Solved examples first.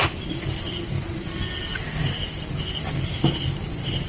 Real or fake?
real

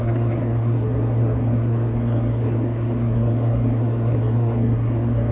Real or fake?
fake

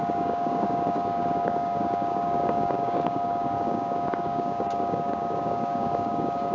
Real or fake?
fake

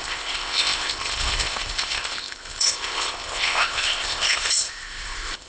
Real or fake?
fake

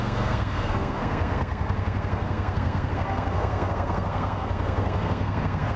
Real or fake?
fake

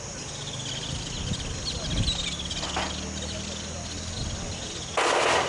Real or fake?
real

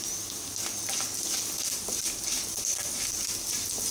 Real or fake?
real